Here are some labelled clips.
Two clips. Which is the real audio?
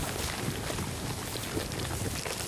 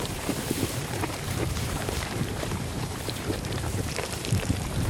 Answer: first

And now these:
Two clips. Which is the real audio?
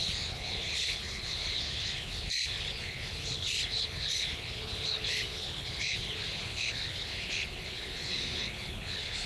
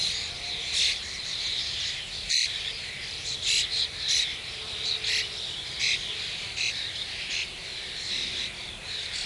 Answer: second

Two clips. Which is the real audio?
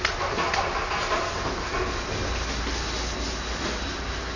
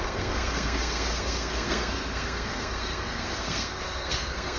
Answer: first